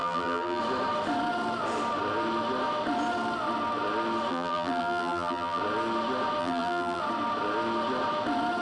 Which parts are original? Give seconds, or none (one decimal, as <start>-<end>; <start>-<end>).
0.6-4.3; 5.6-6.4; 7.0-8.6